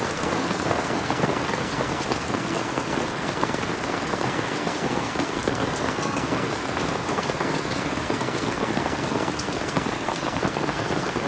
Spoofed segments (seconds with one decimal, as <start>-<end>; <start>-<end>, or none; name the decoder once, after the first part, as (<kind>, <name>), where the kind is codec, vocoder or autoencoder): 0.0-11.3 (codec, SNAC)